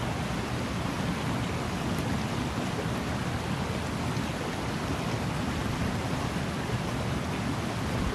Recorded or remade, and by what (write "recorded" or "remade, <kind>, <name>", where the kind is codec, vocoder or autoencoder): recorded